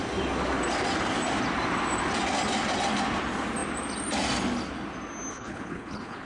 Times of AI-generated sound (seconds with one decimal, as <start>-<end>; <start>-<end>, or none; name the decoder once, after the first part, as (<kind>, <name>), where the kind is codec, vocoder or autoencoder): 5.3-6.3 (codec, HILCodec)